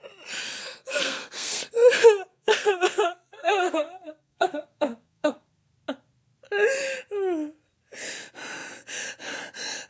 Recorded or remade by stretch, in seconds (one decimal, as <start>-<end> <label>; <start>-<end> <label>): 0.0-0.6 recorded; 0.6-1.6 remade; 1.6-2.3 recorded; 2.3-5.5 remade; 5.5-9.9 recorded